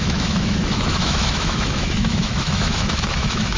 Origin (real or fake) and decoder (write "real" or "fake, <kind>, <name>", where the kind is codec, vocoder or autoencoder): fake, autoencoder, DAC-VAE